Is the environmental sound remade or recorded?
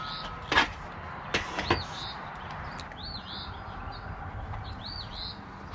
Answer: recorded